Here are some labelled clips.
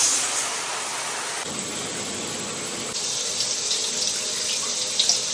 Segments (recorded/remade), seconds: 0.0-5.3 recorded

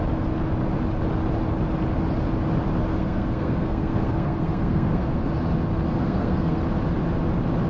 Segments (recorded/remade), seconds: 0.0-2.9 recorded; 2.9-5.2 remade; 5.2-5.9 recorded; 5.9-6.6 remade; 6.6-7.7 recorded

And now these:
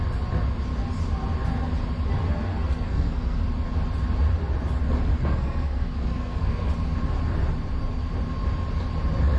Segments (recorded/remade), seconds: 0.0-2.2 recorded; 2.2-3.4 remade; 3.4-5.1 recorded; 5.1-6.7 remade; 6.7-9.4 recorded

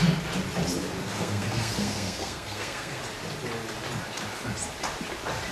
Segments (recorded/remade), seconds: 0.0-1.0 recorded; 1.0-3.0 remade; 3.0-5.5 recorded

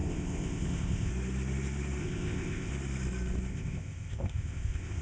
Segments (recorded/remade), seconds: 0.0-1.1 remade; 1.1-2.0 recorded; 2.0-2.7 remade; 2.7-3.5 recorded; 3.5-5.0 remade